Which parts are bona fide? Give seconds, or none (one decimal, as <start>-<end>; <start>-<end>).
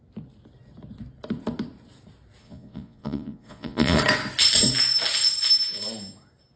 0.0-2.4; 4.0-6.6